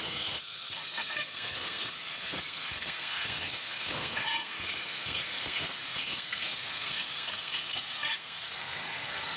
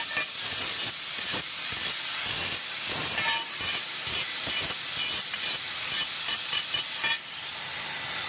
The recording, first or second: second